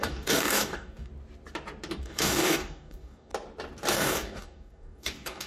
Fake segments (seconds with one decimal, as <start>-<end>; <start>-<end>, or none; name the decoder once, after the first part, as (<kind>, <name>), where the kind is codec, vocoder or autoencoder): 0.0-1.1 (codec, DAC); 2.0-3.3; 3.9-5.5